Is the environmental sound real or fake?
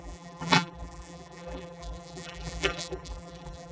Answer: fake